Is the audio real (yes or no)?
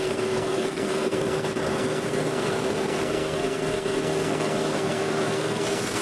no